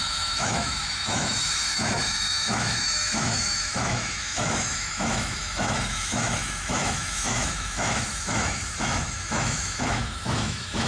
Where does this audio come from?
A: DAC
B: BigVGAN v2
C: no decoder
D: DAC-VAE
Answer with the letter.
D